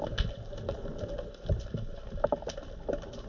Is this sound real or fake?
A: real